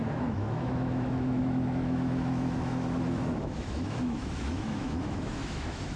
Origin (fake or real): fake